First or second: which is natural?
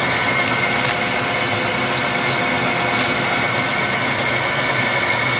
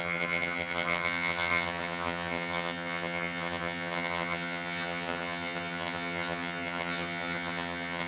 first